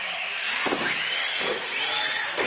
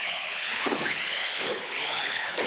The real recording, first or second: first